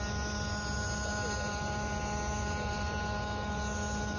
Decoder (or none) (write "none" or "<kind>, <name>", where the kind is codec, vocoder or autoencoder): none